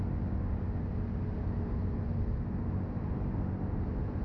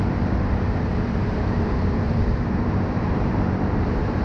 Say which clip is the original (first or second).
first